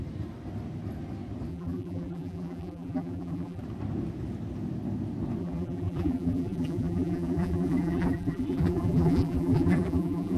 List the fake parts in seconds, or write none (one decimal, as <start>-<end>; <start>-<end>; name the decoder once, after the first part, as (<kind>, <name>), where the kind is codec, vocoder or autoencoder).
1.5-3.6 (vocoder, BigVGAN v2); 5.4-10.4